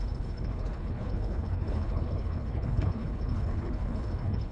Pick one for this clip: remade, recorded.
remade